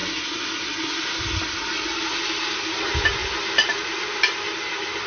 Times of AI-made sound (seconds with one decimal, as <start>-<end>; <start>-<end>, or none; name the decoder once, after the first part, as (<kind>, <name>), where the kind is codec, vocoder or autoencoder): 3.2-5.1 (vocoder, BigVGAN v2)